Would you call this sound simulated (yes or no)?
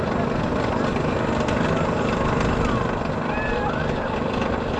no